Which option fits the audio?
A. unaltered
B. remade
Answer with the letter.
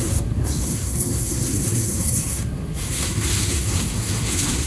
B